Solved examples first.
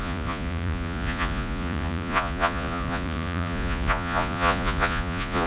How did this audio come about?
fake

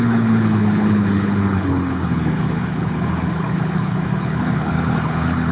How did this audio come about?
fake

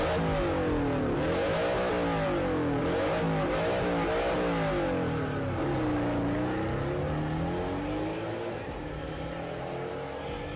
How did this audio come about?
real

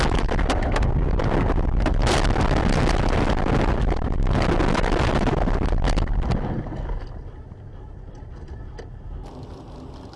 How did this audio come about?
real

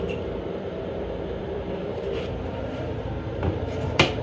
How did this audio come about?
fake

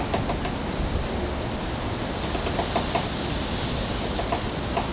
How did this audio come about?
real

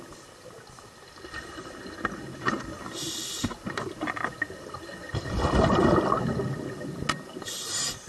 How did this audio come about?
real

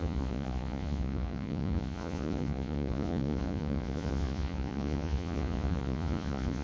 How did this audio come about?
fake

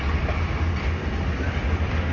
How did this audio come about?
real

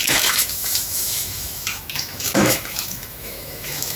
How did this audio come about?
fake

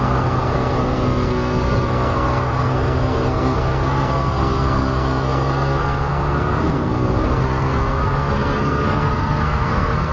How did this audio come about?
fake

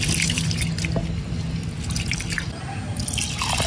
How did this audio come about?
real